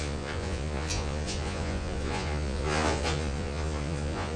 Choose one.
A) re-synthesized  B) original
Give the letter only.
A